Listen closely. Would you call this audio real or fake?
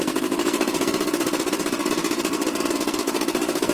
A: fake